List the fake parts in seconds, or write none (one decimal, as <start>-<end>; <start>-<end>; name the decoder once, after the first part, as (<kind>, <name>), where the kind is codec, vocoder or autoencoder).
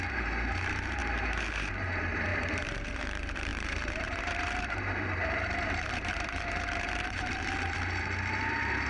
0.0-8.9 (vocoder, BigVGAN v2)